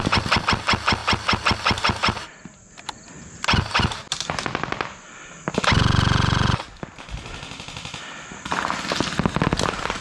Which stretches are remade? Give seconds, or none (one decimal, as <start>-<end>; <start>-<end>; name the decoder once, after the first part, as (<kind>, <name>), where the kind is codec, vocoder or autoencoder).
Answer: none